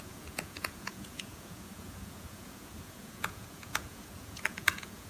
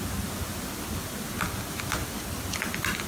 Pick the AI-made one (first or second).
first